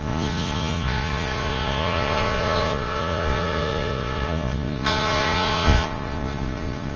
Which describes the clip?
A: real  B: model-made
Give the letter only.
B